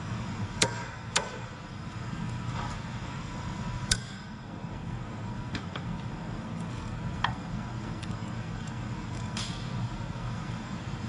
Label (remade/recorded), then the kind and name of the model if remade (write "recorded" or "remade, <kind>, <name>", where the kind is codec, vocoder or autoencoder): remade, codec, SNAC